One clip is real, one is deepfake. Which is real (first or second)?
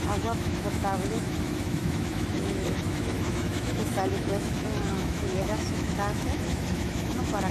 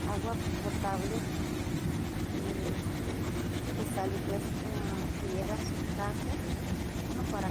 second